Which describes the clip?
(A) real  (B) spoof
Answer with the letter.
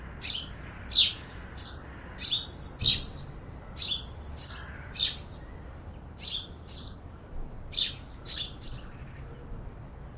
A